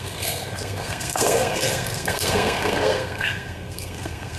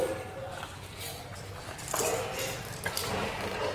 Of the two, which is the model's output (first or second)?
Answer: first